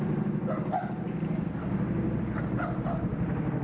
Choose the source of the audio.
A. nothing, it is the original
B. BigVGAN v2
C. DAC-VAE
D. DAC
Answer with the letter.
A